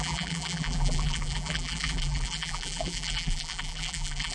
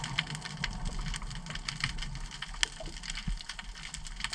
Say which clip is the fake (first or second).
first